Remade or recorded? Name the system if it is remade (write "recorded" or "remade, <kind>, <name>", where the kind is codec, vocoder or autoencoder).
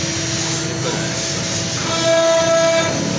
recorded